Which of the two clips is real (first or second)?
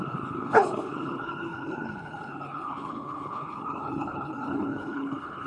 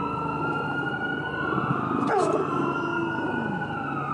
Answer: second